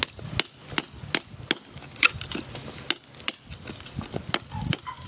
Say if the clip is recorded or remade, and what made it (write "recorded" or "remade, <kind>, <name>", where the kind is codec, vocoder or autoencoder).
recorded